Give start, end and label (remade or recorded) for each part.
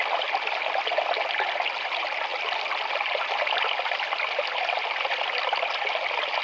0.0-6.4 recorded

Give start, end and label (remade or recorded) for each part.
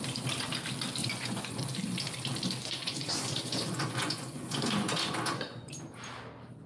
0.0-1.0 recorded; 1.0-1.6 remade; 1.6-2.6 recorded; 2.6-5.8 remade; 5.8-6.7 recorded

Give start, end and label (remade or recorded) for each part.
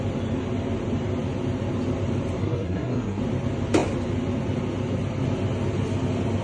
0.0-2.4 recorded; 2.4-3.2 remade; 3.2-6.4 recorded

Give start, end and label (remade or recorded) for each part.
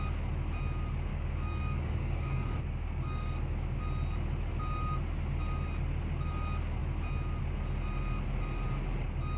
0.0-1.1 recorded; 1.1-3.8 remade; 3.8-9.4 recorded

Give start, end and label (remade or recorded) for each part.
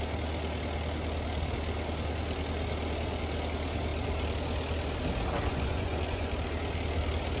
0.0-5.5 recorded; 5.5-6.3 remade; 6.3-7.4 recorded